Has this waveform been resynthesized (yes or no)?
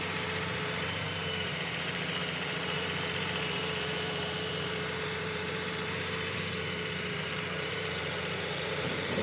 yes